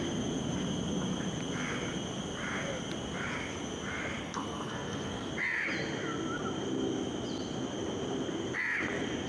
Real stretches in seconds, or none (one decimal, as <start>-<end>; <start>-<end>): 0.0-4.2; 5.3-9.3